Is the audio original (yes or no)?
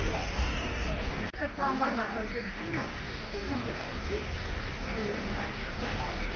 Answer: no